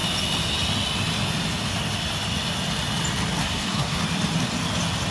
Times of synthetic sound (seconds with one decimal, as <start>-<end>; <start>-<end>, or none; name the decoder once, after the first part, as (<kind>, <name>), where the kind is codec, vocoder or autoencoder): 3.4-4.0 (codec, SNAC)